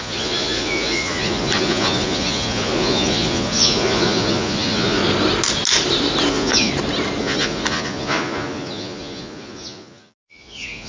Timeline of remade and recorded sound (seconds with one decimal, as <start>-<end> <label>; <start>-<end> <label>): 0.0-5.0 remade; 5.0-6.3 recorded; 6.3-6.7 remade; 6.7-7.2 recorded; 7.2-10.9 remade